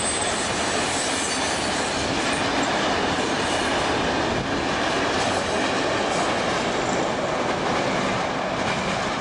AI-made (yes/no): no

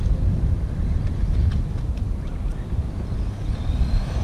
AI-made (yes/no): no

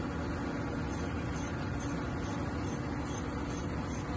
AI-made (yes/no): no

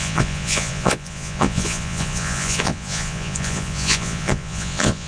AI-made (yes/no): yes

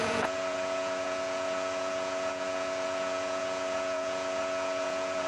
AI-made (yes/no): yes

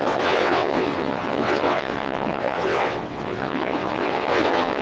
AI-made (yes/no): yes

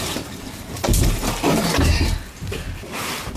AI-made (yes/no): yes